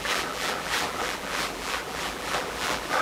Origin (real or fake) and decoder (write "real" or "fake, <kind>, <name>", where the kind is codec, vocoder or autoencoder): fake, vocoder, BigVGAN v2